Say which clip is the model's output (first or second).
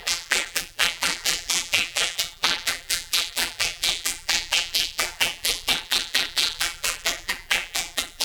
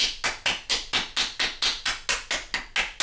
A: first